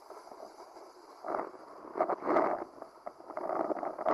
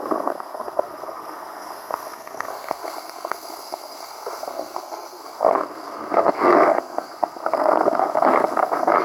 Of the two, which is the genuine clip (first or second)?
first